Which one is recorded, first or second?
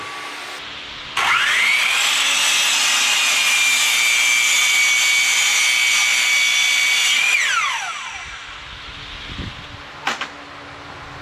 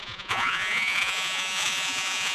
first